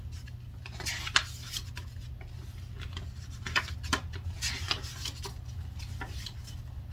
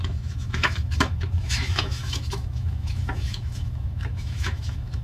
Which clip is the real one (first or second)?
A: first